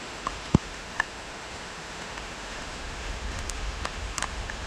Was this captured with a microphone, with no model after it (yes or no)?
no